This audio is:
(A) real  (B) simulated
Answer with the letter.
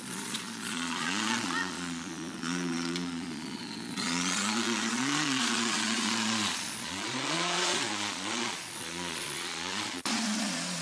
B